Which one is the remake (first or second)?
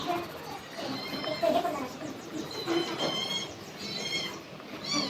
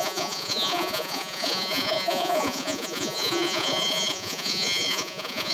second